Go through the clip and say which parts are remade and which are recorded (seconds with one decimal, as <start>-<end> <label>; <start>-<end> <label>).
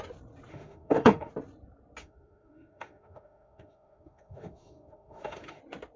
0.0-0.5 recorded; 0.5-1.3 remade; 1.3-2.0 recorded; 2.0-5.6 remade; 5.6-6.0 recorded